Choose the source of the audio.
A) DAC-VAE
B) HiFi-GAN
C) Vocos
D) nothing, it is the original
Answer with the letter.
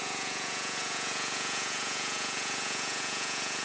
C